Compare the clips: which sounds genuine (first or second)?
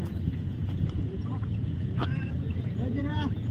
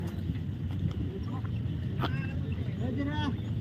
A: second